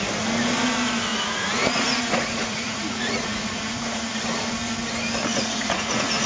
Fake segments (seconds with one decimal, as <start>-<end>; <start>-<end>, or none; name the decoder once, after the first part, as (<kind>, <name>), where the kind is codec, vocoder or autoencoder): 1.1-4.2 (vocoder, Vocos); 5.3-6.3